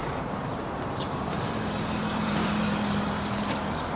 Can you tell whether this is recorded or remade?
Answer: remade